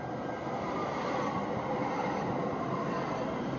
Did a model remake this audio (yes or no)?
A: no